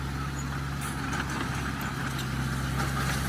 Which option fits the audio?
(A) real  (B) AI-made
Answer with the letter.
A